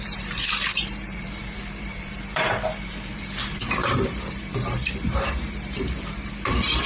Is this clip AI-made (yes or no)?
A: yes